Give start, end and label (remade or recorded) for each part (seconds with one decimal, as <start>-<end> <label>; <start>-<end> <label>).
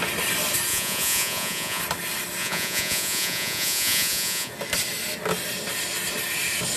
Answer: 0.0-0.7 recorded; 0.7-1.8 remade; 1.8-2.4 recorded; 2.4-4.5 remade; 4.5-6.8 recorded